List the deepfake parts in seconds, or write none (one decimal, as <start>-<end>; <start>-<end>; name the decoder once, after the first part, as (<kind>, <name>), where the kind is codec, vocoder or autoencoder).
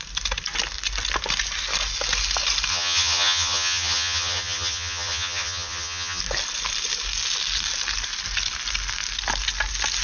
2.7-6.2 (vocoder, HiFi-GAN)